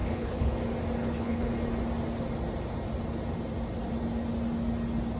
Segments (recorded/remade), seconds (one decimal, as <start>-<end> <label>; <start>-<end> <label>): 0.0-0.6 remade; 0.6-1.0 recorded; 1.0-1.5 remade; 1.5-5.2 recorded